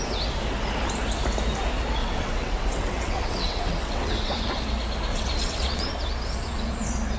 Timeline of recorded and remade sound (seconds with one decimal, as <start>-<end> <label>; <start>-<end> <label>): 0.0-2.0 recorded; 2.0-4.5 remade; 4.5-5.1 recorded; 5.1-5.9 remade; 5.9-7.2 recorded